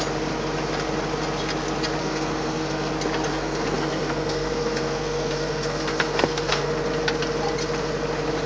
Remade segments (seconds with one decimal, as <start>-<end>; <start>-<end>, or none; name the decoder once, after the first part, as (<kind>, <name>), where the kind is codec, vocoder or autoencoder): 2.0-2.9 (codec, SNAC); 3.3-6.7